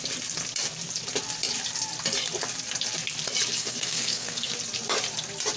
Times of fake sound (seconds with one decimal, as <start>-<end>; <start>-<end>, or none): 3.6-4.5